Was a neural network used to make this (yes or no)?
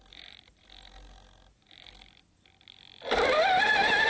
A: no